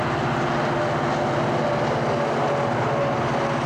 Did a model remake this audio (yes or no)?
no